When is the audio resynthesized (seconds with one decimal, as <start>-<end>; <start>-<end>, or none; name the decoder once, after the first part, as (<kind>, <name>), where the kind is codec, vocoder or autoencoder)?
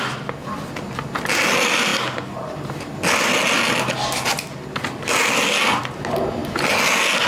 none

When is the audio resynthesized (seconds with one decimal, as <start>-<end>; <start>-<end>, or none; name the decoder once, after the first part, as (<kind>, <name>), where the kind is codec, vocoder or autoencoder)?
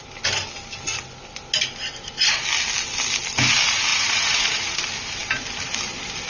3.9-4.8 (vocoder, Vocos)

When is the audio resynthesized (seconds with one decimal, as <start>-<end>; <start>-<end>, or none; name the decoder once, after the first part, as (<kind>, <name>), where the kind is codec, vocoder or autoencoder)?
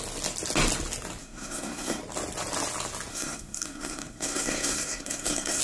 1.2-2.0 (codec, SNAC); 3.1-5.6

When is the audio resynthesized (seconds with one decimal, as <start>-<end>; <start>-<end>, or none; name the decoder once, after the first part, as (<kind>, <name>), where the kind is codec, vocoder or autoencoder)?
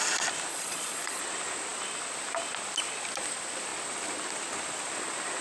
0.5-1.2 (vocoder, Vocos)